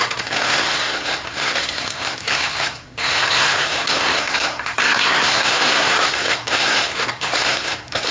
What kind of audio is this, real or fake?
fake